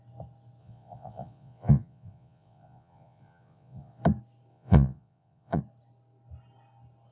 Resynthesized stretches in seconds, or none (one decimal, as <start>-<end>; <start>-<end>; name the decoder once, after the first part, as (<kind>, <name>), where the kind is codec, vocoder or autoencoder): 0.6-4.0 (vocoder, Vocos); 4.5-5.6